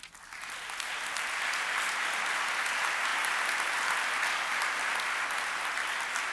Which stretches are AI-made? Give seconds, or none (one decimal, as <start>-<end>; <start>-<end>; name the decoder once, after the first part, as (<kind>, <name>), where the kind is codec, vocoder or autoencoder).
none